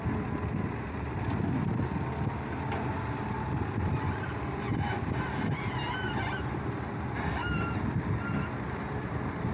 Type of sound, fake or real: real